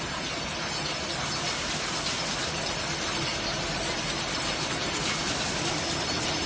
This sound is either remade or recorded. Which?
recorded